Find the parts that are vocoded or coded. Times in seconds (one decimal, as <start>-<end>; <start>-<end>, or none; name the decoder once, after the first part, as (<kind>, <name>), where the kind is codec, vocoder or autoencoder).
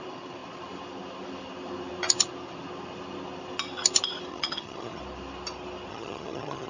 4.3-5.0 (vocoder, HiFi-GAN); 5.9-6.7